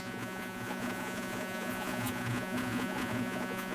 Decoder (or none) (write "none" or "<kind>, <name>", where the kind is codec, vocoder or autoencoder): vocoder, Vocos